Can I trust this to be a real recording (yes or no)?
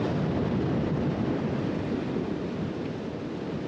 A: yes